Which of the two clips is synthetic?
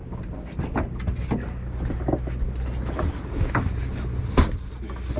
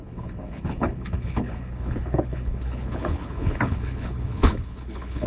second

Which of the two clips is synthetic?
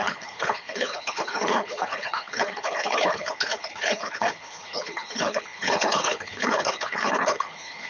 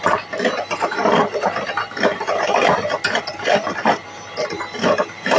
first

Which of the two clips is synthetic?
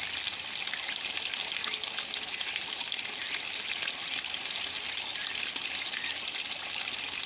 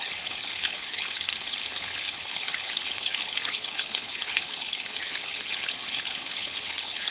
second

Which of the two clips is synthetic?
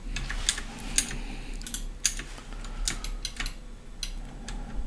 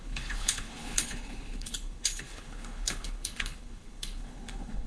second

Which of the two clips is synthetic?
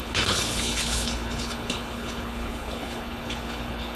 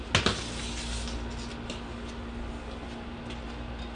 first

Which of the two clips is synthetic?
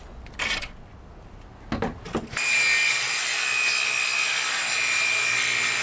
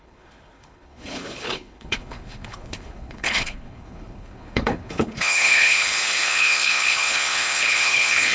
second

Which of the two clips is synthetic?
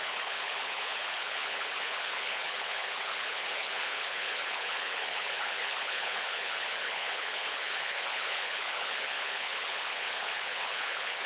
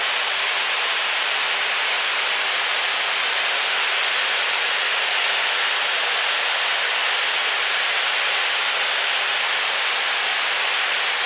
first